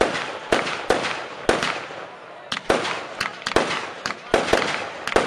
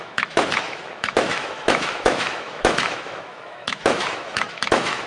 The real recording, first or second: first